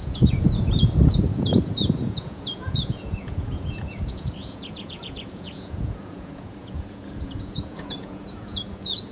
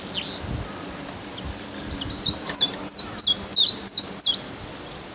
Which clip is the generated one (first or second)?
first